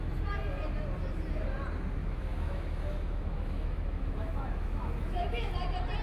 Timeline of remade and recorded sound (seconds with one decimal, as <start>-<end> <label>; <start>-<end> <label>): 0.0-2.0 recorded; 2.0-5.5 remade; 5.5-6.0 recorded